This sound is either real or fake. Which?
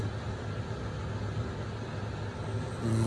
real